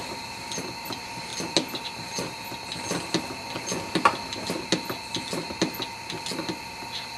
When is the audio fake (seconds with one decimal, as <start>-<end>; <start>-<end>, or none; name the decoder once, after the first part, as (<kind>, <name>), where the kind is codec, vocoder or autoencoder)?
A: none